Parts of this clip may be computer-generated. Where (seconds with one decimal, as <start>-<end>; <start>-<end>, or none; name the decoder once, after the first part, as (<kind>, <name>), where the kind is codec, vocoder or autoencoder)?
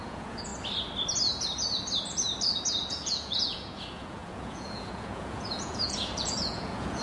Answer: 0.0-0.5 (vocoder, Vocos); 2.7-7.0